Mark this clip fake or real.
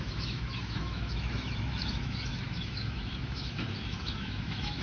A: fake